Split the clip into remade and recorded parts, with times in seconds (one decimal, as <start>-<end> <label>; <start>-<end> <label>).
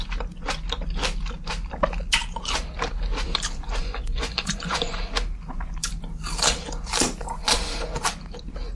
0.0-3.8 recorded; 3.8-5.0 remade; 5.0-8.8 recorded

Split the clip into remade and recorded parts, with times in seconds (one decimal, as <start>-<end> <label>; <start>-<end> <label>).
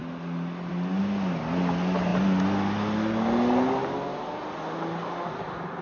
0.0-5.8 recorded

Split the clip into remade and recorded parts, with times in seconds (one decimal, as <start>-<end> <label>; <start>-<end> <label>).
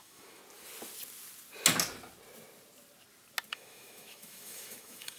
0.0-0.4 remade; 0.4-3.5 recorded; 3.5-5.2 remade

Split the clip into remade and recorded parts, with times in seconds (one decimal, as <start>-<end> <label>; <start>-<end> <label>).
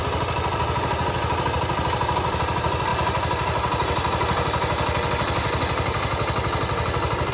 0.0-7.3 recorded